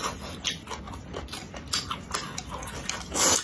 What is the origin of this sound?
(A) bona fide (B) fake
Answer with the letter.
A